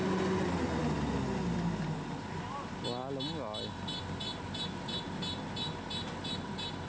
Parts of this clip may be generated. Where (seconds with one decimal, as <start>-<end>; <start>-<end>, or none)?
none